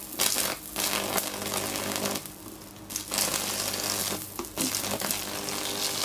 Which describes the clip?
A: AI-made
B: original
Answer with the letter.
B